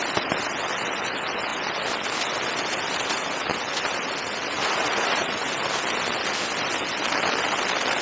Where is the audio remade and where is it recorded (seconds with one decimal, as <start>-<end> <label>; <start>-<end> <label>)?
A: 0.0-4.6 recorded; 4.6-5.5 remade; 5.5-8.0 recorded